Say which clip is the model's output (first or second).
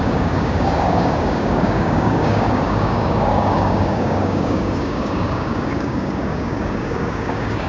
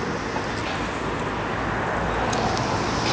first